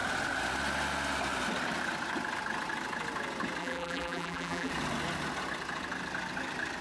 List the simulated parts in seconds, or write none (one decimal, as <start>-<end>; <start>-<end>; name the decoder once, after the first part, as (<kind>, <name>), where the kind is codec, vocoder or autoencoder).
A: 3.6-4.7 (vocoder, BigVGAN v2)